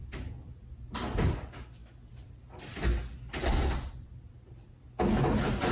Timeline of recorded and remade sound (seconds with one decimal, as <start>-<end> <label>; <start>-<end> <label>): 0.0-5.7 recorded